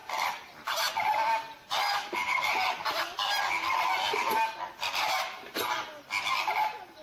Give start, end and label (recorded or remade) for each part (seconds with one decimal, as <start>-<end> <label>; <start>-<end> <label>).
0.0-3.0 remade; 3.0-4.8 recorded; 4.8-5.4 remade; 5.4-7.0 recorded